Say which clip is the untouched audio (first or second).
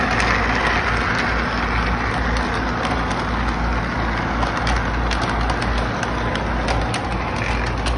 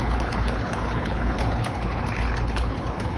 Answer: first